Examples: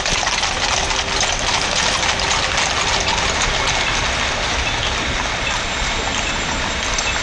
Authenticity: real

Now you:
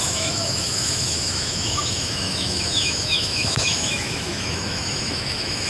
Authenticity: fake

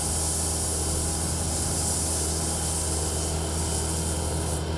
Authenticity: real